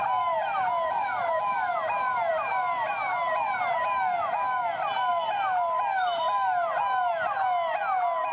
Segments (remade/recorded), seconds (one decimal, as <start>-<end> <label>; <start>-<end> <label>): 0.0-8.3 recorded